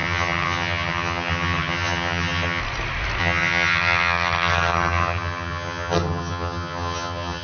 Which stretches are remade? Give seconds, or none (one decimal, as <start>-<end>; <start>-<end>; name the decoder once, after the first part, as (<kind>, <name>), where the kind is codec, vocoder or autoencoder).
0.0-2.6 (vocoder, HiFi-GAN); 3.2-7.4